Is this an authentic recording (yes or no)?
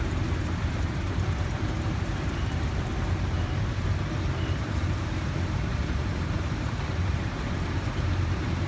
no